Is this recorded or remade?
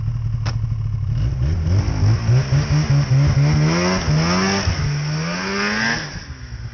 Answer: recorded